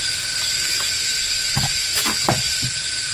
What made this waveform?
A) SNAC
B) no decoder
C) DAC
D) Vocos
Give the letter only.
B